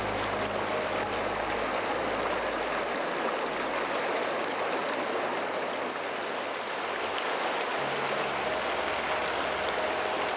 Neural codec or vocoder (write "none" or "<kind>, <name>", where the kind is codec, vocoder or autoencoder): none